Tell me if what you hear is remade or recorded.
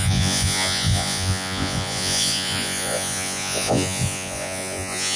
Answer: remade